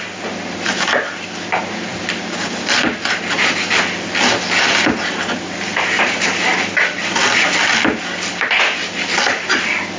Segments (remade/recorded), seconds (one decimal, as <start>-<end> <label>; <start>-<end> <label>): 0.0-10.0 recorded